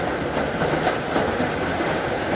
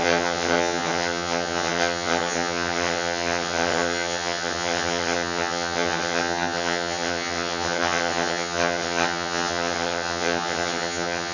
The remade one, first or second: second